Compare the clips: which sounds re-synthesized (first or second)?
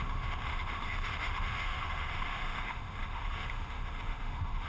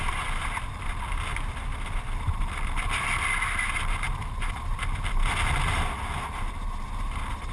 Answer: first